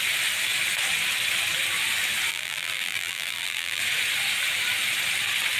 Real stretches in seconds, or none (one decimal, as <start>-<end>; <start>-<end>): 0.0-2.3; 3.8-5.6